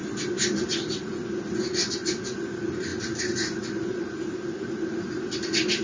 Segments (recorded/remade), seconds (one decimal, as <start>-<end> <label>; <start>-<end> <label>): 0.0-0.8 remade; 0.8-5.8 recorded